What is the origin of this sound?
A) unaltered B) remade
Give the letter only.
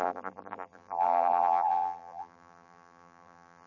B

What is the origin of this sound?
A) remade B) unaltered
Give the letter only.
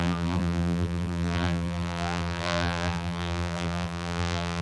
A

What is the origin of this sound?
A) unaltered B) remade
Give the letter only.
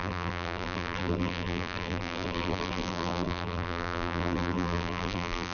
B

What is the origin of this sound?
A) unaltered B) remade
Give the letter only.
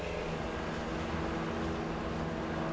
A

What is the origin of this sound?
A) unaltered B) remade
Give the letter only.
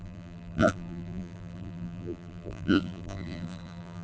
B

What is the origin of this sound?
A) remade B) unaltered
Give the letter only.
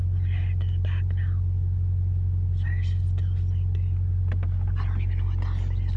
B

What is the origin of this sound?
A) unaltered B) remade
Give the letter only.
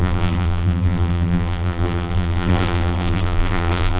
B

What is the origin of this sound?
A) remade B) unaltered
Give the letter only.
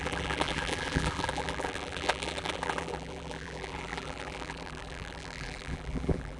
A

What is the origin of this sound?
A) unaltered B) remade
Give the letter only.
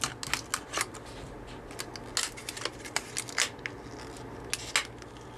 A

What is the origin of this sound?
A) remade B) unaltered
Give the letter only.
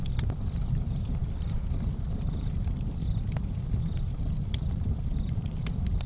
A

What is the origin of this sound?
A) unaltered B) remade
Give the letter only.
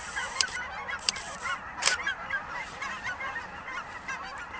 B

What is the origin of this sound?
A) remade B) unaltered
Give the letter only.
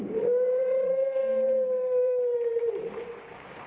A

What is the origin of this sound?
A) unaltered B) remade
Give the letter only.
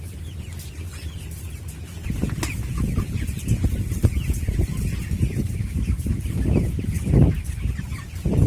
A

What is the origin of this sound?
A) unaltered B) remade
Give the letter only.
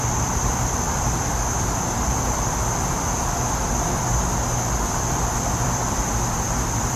B